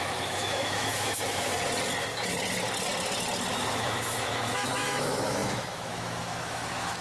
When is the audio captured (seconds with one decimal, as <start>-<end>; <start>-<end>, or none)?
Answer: 1.5-3.5